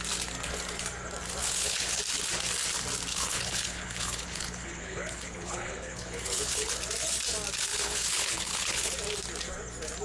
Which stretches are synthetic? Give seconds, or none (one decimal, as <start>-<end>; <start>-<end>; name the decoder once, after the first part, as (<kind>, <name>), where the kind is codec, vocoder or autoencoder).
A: 1.4-2.0 (codec, HILCodec); 3.1-6.8; 7.7-8.9